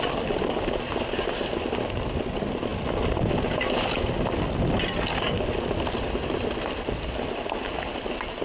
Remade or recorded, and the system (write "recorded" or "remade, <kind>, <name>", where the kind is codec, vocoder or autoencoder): recorded